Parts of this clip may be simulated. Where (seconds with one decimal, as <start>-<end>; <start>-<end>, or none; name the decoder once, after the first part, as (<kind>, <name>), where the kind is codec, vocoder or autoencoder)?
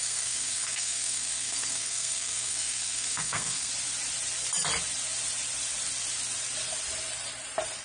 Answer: 0.0-3.7 (codec, SNAC)